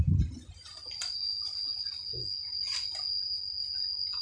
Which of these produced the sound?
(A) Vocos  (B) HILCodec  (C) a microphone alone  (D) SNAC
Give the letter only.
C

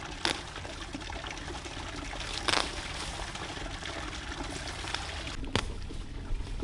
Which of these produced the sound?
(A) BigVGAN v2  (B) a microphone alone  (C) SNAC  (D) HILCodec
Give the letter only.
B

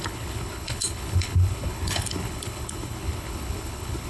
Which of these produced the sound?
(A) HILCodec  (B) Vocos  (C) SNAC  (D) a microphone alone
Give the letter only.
A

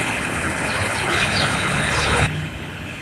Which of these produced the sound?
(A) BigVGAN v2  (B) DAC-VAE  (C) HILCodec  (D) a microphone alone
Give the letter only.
C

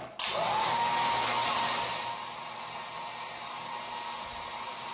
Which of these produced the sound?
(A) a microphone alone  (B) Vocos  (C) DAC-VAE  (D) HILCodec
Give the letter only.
A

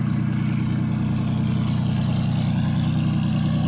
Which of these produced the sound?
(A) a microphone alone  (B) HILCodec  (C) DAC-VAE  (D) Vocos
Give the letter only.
A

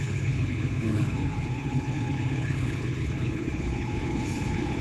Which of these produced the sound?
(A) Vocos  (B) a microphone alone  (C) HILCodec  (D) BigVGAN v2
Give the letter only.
C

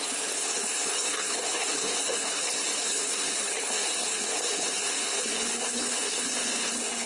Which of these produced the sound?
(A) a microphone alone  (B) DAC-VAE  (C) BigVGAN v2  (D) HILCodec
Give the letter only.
D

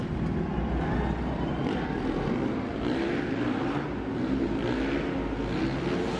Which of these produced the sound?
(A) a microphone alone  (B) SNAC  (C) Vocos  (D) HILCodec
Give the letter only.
A